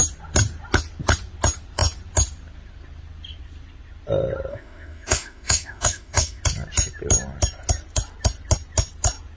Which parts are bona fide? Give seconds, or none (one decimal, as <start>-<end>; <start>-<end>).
0.0-4.5; 6.4-9.4